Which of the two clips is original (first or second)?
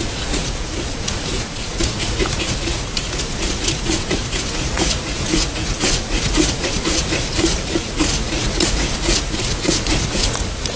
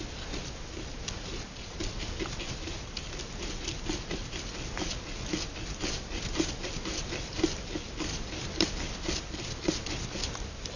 second